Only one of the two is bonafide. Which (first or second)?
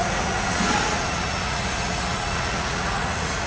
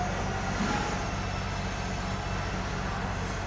second